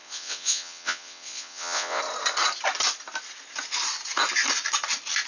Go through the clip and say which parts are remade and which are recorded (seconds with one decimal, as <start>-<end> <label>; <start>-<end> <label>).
0.0-2.0 remade; 2.0-5.3 recorded